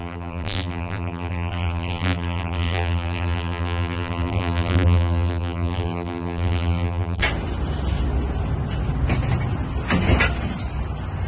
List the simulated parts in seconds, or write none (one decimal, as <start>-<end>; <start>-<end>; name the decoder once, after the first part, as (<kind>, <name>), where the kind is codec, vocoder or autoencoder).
0.0-7.2 (vocoder, BigVGAN v2)